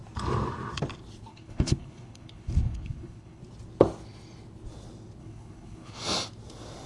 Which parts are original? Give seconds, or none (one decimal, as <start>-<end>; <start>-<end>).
0.0-1.3; 3.4-5.2; 6.0-6.9